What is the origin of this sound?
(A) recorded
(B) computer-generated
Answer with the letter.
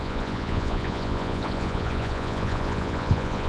B